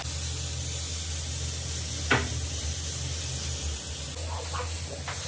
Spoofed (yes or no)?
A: no